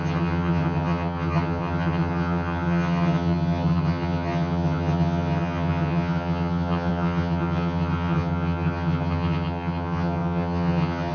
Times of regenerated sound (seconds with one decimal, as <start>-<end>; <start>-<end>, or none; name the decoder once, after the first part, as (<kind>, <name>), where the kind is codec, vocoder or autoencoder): 0.0-11.1 (vocoder, HiFi-GAN)